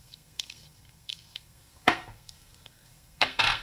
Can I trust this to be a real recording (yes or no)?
no